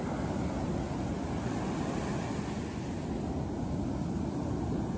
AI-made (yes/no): no